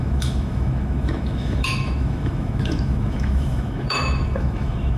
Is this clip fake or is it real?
fake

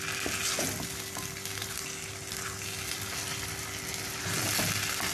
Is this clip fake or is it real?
real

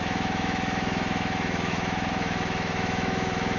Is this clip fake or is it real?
fake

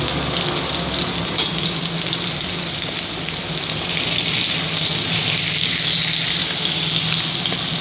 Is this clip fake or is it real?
real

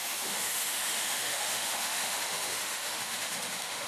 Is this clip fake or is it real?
fake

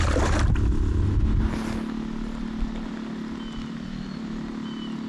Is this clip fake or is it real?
real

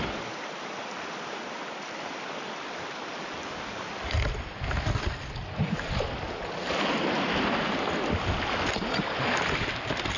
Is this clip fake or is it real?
real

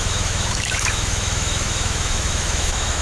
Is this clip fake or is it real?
fake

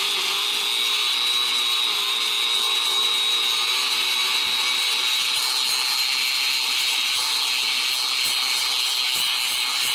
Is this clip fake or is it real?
real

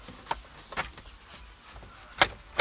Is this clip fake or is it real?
real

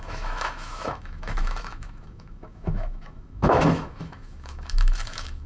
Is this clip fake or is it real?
fake